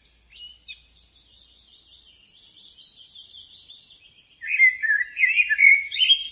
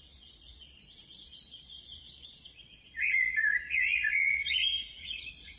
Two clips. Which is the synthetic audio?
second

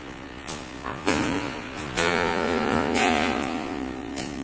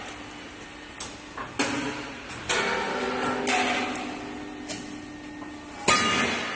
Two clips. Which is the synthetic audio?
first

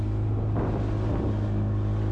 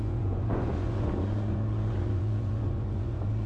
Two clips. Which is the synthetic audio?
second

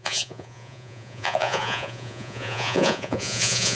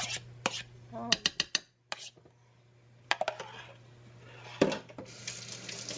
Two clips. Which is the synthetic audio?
first